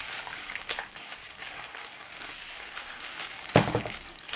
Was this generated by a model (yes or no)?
yes